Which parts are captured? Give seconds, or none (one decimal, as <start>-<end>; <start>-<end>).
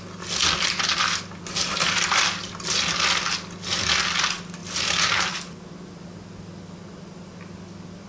0.0-4.6; 5.3-8.1